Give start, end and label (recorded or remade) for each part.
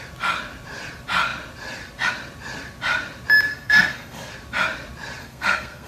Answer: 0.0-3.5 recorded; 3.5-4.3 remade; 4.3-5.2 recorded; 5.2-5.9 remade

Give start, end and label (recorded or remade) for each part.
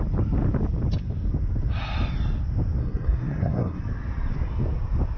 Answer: 0.0-2.8 recorded; 2.8-3.8 remade; 3.8-5.2 recorded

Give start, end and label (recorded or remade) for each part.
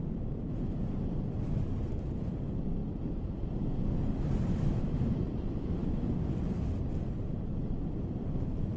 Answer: 0.0-8.8 recorded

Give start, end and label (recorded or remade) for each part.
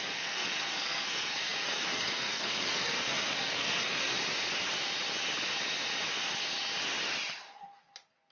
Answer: 0.0-4.2 remade; 4.2-8.3 recorded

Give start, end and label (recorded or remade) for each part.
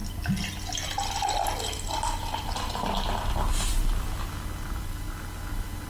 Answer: 0.0-5.9 recorded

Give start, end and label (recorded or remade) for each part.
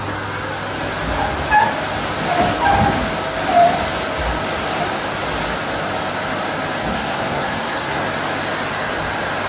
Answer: 0.0-6.9 recorded; 6.9-8.0 remade; 8.0-9.5 recorded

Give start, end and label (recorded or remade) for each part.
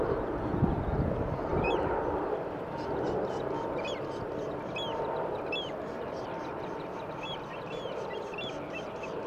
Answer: 0.0-9.3 recorded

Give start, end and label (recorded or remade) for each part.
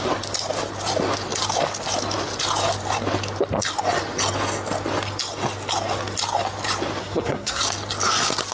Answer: 0.0-7.0 recorded; 7.0-7.6 remade; 7.6-8.5 recorded